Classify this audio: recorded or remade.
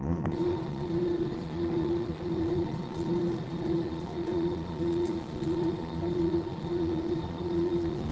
remade